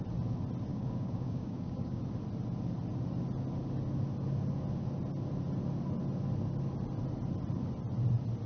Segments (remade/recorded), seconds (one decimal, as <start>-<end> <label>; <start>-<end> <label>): 0.0-0.7 recorded; 0.7-2.0 remade; 2.0-8.5 recorded

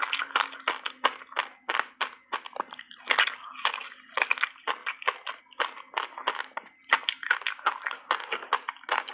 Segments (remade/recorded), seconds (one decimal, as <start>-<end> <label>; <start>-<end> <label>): 0.0-9.1 recorded

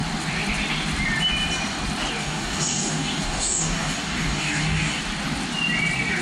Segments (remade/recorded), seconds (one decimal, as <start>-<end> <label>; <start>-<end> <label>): 0.0-2.2 recorded; 2.2-5.0 remade; 5.0-6.2 recorded

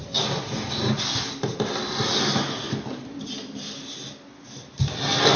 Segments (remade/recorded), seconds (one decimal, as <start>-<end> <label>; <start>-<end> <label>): 0.0-5.4 recorded